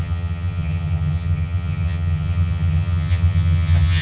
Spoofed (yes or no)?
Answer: yes